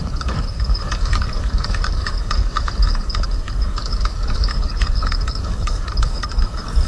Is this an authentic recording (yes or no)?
no